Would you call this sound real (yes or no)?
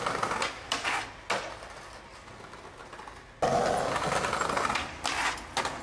yes